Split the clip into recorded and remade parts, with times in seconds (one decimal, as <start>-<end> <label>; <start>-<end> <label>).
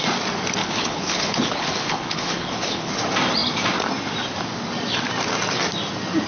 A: 0.0-0.6 recorded; 0.6-2.9 remade; 2.9-6.3 recorded